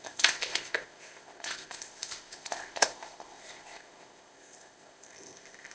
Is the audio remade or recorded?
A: remade